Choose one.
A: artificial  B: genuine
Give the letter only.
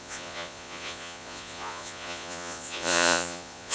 A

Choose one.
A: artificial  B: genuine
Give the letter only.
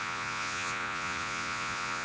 A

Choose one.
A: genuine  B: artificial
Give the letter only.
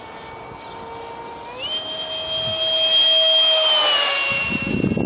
A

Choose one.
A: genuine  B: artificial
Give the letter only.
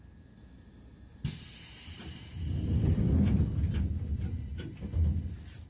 A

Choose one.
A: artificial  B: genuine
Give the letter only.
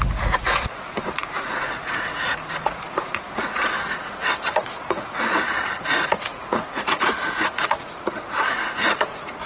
A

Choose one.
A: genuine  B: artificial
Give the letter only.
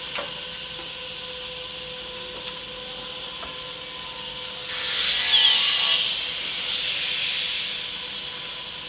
A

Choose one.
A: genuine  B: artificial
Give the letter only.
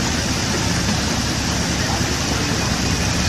A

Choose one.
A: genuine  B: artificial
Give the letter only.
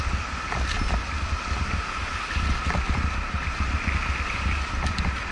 A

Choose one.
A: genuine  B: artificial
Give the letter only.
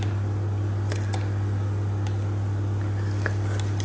A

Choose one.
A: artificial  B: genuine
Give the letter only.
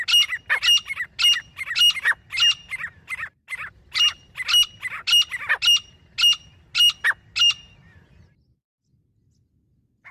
B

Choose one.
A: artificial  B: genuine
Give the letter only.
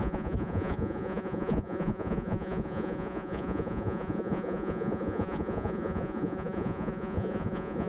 A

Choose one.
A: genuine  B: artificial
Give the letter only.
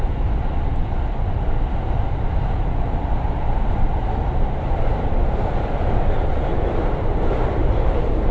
A